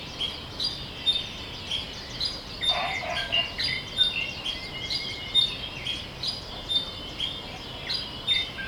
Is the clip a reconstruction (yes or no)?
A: no